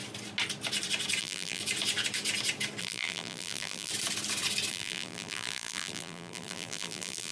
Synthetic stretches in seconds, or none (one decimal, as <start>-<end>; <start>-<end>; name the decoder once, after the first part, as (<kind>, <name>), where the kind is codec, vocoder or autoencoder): 1.2-1.6 (vocoder, BigVGAN v2); 2.8-3.9; 4.7-7.3